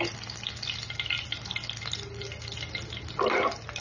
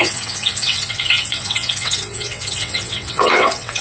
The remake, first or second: second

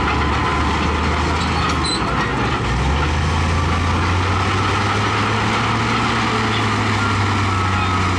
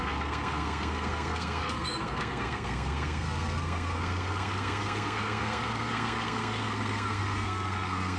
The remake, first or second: second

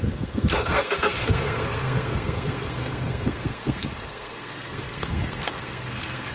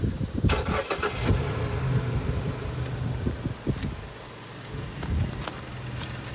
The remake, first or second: first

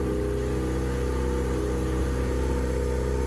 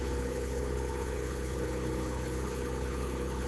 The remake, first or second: second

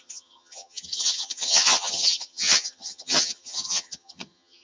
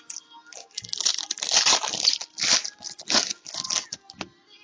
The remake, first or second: first